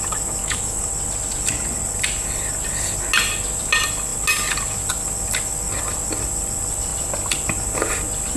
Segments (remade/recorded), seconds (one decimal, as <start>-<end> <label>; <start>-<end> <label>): 0.0-0.4 recorded; 0.4-0.9 remade; 0.9-8.4 recorded